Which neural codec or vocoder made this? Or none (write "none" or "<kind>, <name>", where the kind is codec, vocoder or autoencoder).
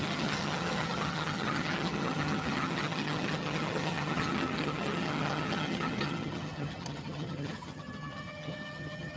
vocoder, HiFi-GAN